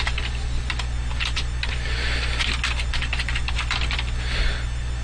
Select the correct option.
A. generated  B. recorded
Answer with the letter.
B